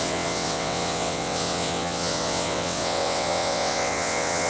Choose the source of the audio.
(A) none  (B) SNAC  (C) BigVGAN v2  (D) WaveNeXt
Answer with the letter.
D